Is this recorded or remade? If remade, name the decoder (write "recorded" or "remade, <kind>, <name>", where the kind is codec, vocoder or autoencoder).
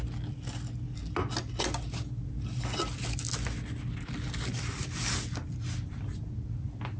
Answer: recorded